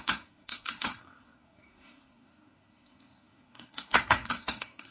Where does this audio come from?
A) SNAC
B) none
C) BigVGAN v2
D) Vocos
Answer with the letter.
A